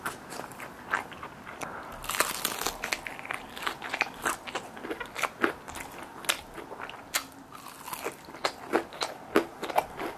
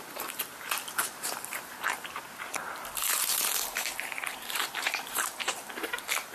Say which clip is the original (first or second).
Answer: first